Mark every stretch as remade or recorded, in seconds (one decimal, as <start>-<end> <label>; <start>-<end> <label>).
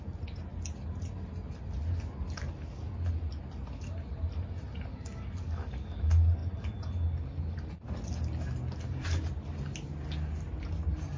0.0-4.9 recorded; 4.9-6.0 remade; 6.0-11.2 recorded